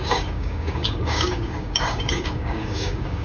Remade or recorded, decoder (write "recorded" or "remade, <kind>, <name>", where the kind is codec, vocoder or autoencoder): remade, codec, DAC